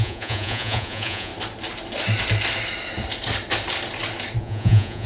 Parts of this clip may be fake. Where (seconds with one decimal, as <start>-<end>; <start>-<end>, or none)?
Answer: 0.0-1.3; 4.4-5.1